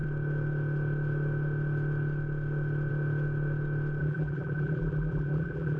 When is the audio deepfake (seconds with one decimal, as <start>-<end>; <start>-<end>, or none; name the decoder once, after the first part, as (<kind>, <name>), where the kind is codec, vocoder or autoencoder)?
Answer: 4.0-5.8 (vocoder, BigVGAN v2)